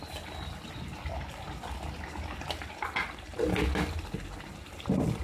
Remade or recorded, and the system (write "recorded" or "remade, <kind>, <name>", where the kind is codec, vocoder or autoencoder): recorded